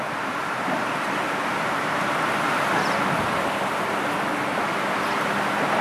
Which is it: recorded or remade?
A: recorded